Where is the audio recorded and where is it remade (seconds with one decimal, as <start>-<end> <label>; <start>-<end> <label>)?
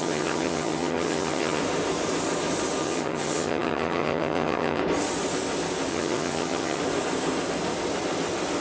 0.0-1.6 remade; 1.6-2.8 recorded; 2.8-4.8 remade; 4.8-5.9 recorded; 5.9-6.8 remade; 6.8-8.6 recorded